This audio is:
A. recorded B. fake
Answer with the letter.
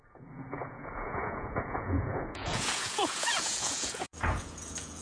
B